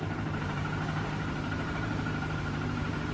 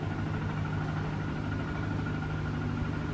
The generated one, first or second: first